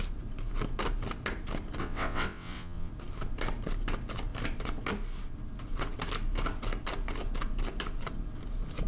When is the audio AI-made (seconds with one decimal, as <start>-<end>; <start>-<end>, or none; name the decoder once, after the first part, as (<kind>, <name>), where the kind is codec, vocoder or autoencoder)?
1.8-2.9 (vocoder, WaveNeXt)